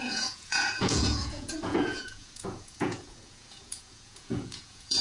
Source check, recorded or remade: remade